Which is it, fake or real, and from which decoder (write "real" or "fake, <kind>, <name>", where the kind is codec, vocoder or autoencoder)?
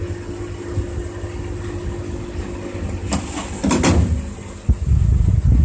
real